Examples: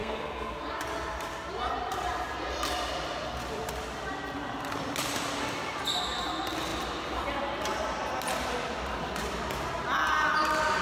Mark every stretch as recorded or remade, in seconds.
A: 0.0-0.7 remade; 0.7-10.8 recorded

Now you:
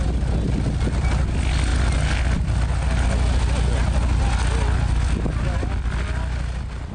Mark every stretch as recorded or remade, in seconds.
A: 0.0-6.9 recorded